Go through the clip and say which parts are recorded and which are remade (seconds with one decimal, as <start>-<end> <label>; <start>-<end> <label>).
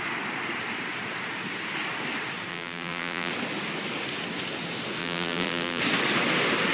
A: 0.0-2.5 recorded; 2.5-3.3 remade; 3.3-5.0 recorded; 5.0-5.8 remade; 5.8-6.7 recorded